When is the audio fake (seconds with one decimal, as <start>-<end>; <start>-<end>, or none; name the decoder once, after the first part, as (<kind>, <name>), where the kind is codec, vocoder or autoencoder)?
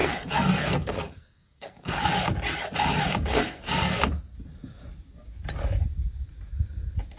0.0-2.1 (codec, SNAC); 3.3-4.0